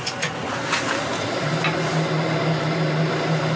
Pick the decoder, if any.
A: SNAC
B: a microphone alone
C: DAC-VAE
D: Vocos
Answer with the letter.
B